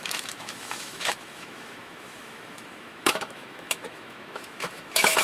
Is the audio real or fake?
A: fake